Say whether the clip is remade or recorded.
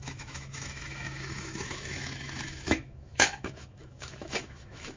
remade